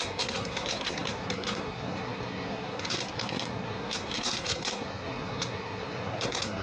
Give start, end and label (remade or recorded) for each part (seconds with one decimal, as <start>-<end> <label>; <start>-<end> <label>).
0.0-6.6 remade